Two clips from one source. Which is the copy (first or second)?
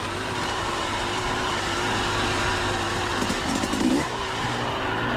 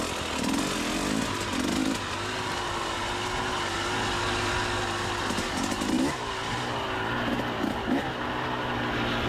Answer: first